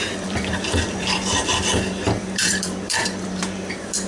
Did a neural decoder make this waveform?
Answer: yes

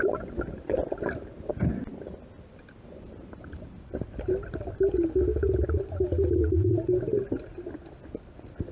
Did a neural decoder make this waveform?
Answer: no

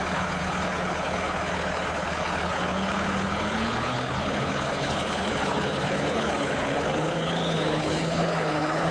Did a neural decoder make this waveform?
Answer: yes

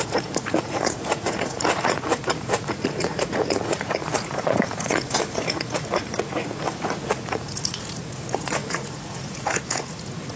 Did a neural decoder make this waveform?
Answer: yes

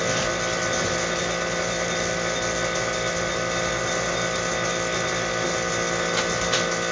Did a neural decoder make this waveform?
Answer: no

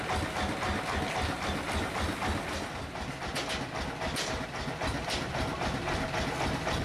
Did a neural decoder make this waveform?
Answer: no